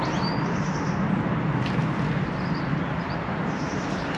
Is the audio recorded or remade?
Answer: recorded